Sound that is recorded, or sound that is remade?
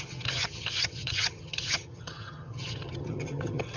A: remade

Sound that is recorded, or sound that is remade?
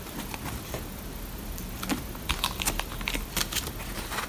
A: recorded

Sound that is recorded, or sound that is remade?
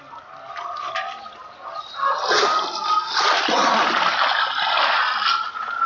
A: recorded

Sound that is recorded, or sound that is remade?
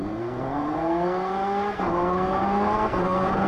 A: remade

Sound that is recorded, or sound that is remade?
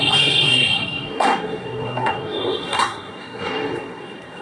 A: remade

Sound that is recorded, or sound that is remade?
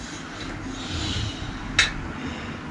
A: recorded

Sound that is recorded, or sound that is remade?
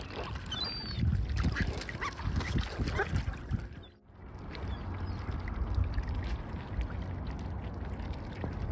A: recorded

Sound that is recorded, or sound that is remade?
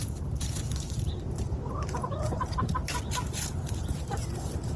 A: remade